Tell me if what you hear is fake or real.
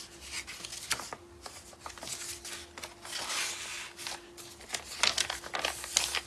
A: real